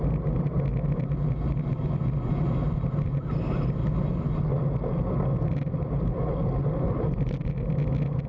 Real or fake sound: real